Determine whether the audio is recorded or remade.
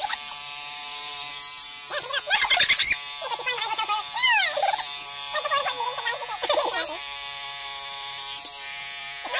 recorded